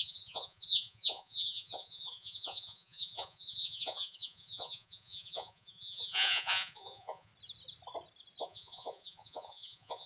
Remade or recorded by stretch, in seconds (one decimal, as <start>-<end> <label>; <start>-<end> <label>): 0.0-7.3 remade; 7.3-8.4 recorded; 8.4-10.1 remade